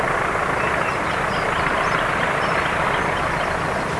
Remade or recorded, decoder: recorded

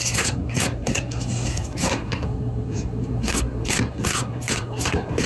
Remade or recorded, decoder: remade, codec, SNAC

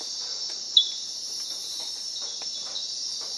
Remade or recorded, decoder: remade, vocoder, BigVGAN v2